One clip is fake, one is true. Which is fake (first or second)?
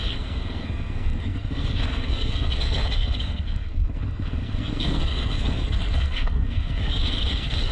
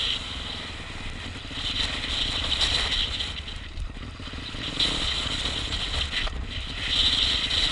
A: first